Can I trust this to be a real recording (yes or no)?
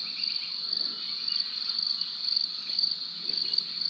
yes